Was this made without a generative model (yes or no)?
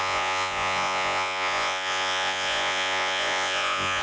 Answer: no